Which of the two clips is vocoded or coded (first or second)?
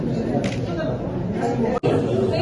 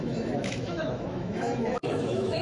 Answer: second